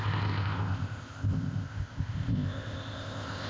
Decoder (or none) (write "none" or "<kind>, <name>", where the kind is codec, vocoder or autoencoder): codec, ZipCodec